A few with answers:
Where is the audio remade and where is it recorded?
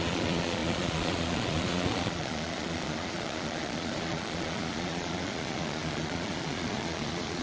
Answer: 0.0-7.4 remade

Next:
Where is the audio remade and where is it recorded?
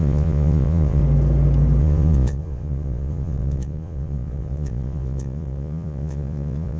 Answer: 0.0-1.0 remade; 1.0-1.8 recorded; 1.8-6.8 remade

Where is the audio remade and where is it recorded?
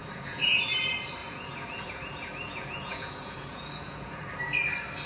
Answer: 0.0-0.6 remade; 0.6-1.2 recorded; 1.2-4.3 remade; 4.3-5.1 recorded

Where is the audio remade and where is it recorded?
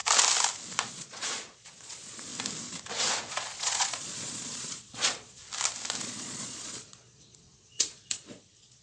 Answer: 0.0-0.9 recorded; 0.9-2.3 remade; 2.3-3.3 recorded; 3.3-5.4 remade; 5.4-6.0 recorded; 6.0-8.8 remade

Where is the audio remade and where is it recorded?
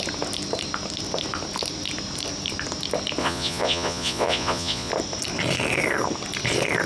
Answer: 0.0-3.2 recorded; 3.2-4.9 remade; 4.9-6.9 recorded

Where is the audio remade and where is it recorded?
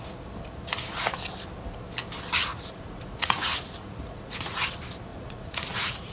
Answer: 0.0-2.5 recorded; 2.5-4.6 remade; 4.6-5.1 recorded; 5.1-6.1 remade